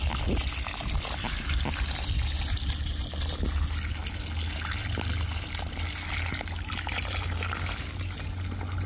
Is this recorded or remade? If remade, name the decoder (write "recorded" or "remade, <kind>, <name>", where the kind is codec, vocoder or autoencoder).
recorded